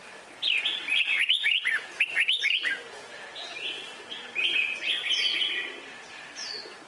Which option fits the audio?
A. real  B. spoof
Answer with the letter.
A